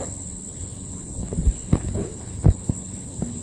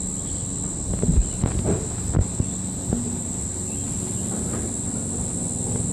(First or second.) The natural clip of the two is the second